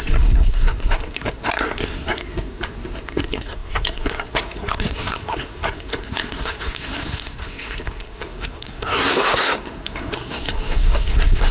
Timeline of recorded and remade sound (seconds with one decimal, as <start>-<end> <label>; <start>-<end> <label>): 0.0-11.5 remade